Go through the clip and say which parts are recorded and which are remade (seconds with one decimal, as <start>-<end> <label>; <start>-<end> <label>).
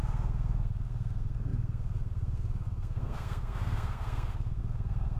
0.0-5.2 remade